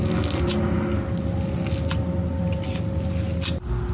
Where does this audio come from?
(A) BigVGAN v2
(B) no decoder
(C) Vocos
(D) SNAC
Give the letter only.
B